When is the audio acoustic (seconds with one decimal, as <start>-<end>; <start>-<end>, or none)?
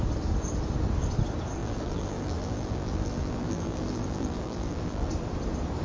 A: 0.0-1.6; 5.1-5.8